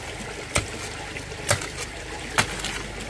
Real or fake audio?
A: real